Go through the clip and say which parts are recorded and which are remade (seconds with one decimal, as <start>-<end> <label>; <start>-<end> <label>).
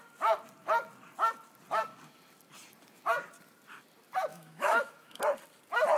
0.0-4.3 recorded; 4.3-5.2 remade; 5.2-6.0 recorded